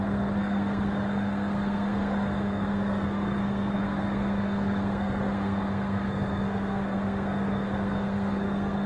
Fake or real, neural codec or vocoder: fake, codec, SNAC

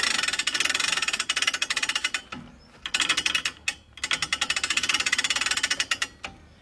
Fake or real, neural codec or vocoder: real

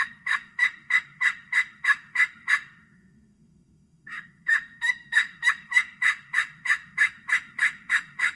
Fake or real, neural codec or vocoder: fake, autoencoder, DAC-VAE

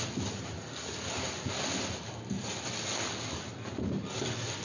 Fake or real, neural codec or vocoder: real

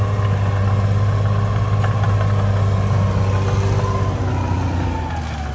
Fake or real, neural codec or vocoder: real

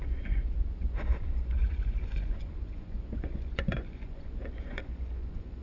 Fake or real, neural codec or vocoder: fake, vocoder, Vocos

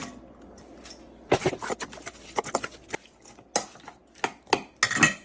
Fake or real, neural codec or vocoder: real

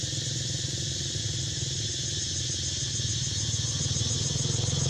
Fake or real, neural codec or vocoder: real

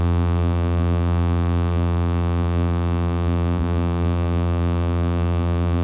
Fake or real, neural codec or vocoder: fake, vocoder, BigVGAN v2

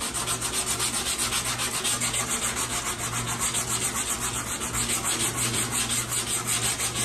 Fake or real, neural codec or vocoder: real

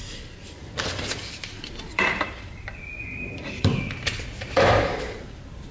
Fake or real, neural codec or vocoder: fake, vocoder, BigVGAN v2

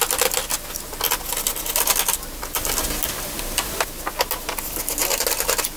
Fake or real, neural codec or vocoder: real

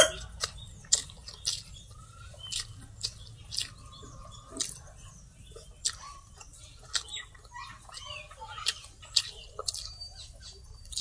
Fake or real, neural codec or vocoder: real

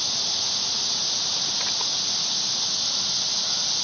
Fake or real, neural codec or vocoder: real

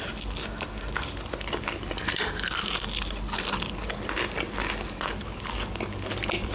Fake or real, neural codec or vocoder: real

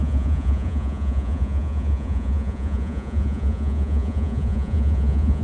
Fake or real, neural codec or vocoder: fake, vocoder, Vocos